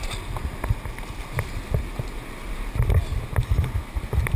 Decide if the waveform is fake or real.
real